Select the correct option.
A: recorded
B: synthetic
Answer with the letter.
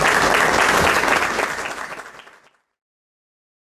A